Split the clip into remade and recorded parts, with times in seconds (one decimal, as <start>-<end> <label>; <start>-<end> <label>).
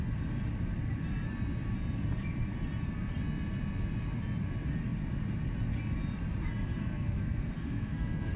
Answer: 0.0-6.8 recorded; 6.8-8.4 remade